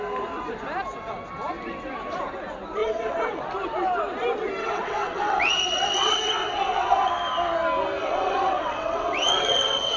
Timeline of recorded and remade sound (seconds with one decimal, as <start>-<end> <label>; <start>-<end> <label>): 0.0-2.8 recorded; 2.8-3.4 remade; 3.4-4.6 recorded; 4.6-7.1 remade; 7.1-8.0 recorded; 8.0-10.0 remade